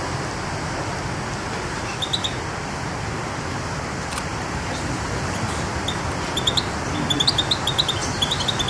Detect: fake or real real